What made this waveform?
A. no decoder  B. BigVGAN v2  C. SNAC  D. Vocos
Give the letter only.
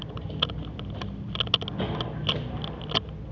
A